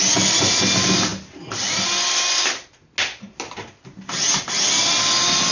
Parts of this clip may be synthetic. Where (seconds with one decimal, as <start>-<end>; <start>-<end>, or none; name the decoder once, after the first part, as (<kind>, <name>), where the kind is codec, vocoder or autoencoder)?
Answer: none